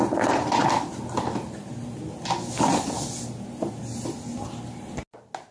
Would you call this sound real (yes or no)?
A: yes